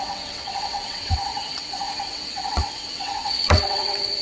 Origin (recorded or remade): remade